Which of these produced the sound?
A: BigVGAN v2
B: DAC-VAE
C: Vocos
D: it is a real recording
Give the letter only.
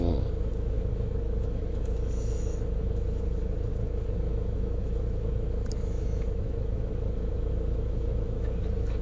B